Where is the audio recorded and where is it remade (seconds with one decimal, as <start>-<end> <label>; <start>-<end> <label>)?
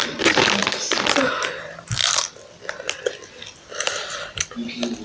0.0-5.0 recorded